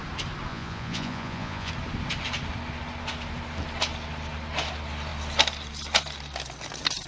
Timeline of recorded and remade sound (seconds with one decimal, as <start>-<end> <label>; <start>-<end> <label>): 0.0-0.5 recorded; 0.5-1.7 remade; 1.7-7.1 recorded